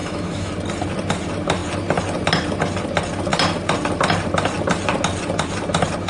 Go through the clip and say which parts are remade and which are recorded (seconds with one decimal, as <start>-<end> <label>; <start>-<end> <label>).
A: 0.0-0.5 remade; 0.5-6.1 recorded